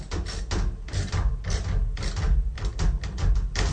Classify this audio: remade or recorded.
recorded